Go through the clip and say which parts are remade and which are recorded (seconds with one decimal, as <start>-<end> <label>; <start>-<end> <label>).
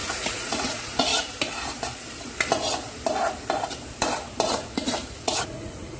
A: 0.0-1.1 remade; 1.1-4.7 recorded; 4.7-6.0 remade